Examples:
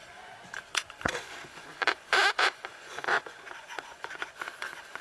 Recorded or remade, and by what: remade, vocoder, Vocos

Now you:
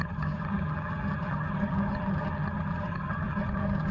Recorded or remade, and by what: remade, vocoder, HiFi-GAN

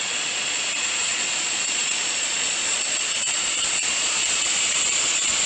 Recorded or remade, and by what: remade, vocoder, Vocos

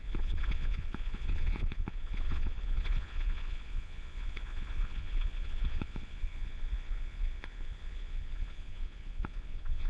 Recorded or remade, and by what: remade, vocoder, Vocos